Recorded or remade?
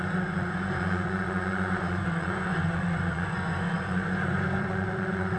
remade